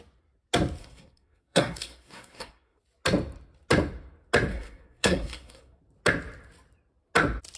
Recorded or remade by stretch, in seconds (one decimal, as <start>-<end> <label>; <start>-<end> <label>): 0.0-0.8 recorded; 0.8-2.8 remade; 2.8-4.5 recorded; 4.5-5.8 remade; 5.8-7.6 recorded